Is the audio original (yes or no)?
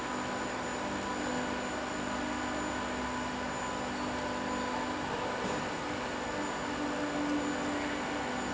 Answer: yes